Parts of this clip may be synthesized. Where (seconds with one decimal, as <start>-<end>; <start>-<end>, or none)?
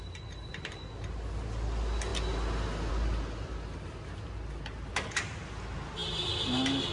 none